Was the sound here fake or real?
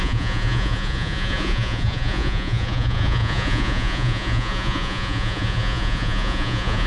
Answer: fake